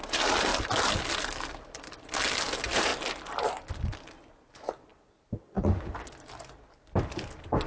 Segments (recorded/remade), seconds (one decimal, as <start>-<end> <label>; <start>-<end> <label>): 0.0-2.9 remade; 2.9-3.7 recorded; 3.7-4.9 remade; 4.9-6.1 recorded; 6.1-7.7 remade